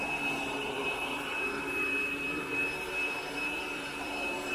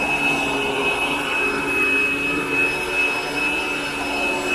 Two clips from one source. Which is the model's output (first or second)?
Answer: first